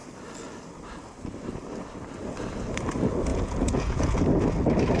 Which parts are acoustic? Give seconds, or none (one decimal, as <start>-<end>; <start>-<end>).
0.0-3.3; 4.2-5.0